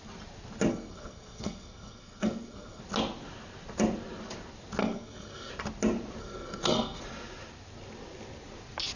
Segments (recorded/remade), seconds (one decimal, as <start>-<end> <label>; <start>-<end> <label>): 0.0-0.7 recorded; 0.7-2.8 remade; 2.8-4.8 recorded; 4.8-5.5 remade; 5.5-6.2 recorded; 6.2-7.0 remade; 7.0-9.0 recorded